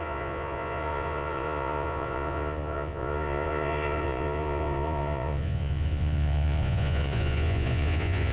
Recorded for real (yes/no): no